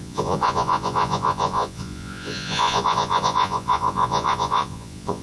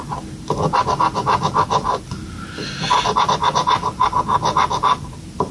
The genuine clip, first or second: second